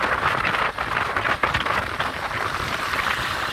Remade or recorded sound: recorded